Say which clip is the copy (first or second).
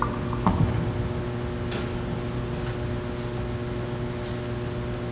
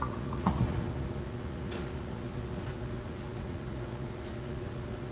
second